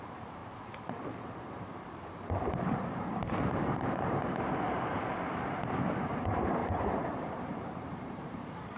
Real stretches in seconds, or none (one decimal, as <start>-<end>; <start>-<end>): 0.4-1.3; 4.2-4.9